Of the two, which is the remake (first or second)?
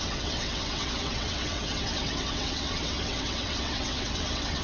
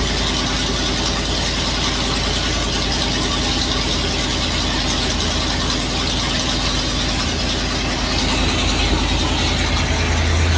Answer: first